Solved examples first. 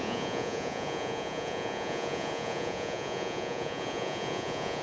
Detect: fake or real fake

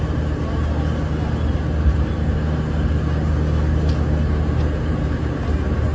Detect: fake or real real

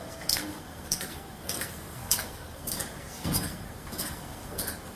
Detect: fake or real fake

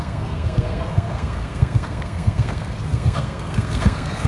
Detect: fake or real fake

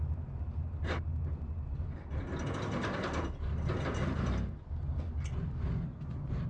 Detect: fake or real real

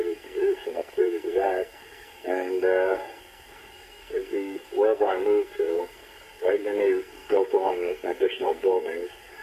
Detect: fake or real fake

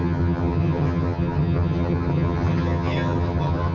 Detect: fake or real fake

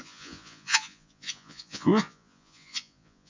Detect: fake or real fake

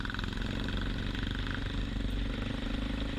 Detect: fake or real real